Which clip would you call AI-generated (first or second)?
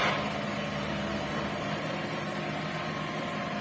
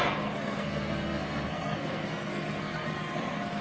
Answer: second